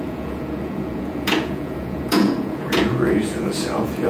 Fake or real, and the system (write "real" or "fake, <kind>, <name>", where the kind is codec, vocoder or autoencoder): fake, vocoder, Vocos